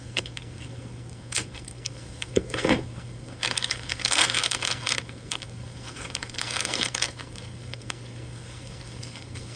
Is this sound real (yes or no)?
no